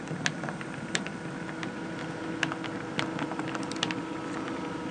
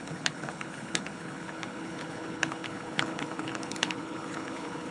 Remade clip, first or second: second